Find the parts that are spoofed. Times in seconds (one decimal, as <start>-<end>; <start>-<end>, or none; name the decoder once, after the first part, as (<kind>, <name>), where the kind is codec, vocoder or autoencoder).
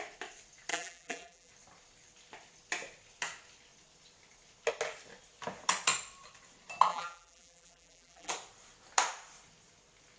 0.7-1.5 (vocoder, BigVGAN v2); 6.9-8.3